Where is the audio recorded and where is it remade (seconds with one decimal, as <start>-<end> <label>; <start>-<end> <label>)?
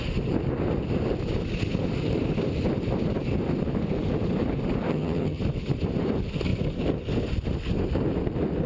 0.0-4.9 recorded; 4.9-5.4 remade; 5.4-8.7 recorded